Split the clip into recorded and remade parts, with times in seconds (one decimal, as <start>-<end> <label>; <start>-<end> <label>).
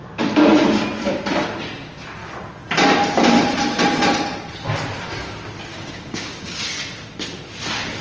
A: 0.0-5.7 recorded; 5.7-6.6 remade; 6.6-8.0 recorded